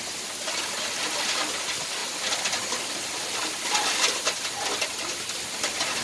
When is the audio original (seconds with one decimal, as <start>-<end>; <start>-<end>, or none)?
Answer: 0.0-6.0